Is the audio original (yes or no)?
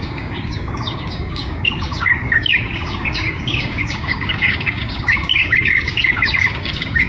no